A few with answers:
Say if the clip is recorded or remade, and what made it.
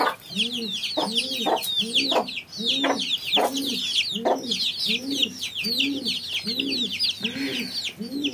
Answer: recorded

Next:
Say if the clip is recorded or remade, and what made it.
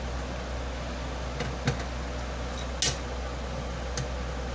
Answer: recorded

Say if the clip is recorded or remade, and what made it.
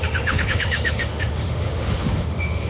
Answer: remade, autoencoder, DAC-VAE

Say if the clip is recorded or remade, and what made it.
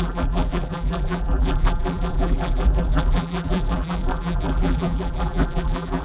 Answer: remade, vocoder, BigVGAN v2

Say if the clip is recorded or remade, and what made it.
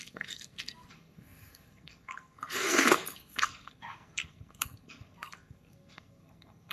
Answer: remade, codec, SNAC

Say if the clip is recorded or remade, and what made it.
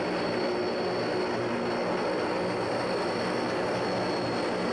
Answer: recorded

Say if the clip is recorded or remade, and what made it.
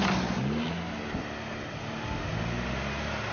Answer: recorded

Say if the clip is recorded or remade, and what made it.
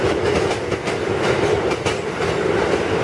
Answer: remade, vocoder, BigVGAN v2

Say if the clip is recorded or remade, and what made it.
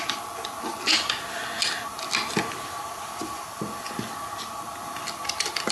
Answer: recorded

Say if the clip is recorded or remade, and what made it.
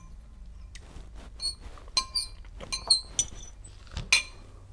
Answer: recorded